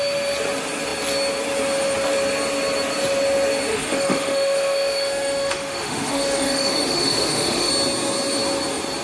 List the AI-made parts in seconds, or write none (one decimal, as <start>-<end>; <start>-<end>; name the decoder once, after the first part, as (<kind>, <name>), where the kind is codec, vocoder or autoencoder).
3.7-7.7 (autoencoder, DAC-VAE)